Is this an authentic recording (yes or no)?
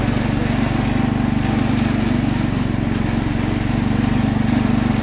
yes